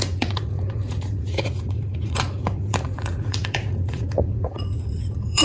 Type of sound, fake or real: fake